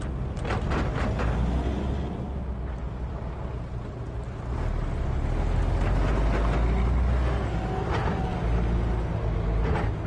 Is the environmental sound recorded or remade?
recorded